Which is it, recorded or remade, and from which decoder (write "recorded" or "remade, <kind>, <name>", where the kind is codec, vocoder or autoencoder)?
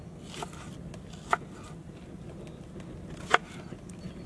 recorded